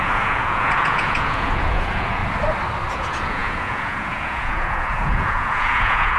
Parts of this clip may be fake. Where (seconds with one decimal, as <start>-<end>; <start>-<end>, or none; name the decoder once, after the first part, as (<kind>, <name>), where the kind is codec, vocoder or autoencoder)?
0.0-2.2 (vocoder, Vocos); 2.9-6.2